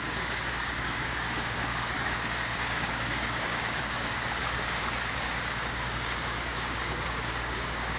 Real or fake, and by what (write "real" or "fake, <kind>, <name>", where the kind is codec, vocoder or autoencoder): fake, codec, DAC